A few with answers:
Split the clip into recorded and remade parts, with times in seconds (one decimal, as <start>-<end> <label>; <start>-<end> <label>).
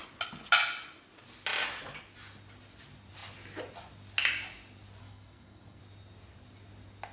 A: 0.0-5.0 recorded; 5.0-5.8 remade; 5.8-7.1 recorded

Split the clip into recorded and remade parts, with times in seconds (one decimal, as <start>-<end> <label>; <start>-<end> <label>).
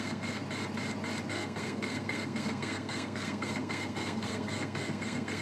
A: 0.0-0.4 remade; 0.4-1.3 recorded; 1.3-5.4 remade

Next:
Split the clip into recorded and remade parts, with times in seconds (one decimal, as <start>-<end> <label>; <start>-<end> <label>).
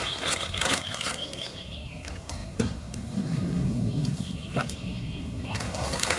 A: 0.0-6.2 remade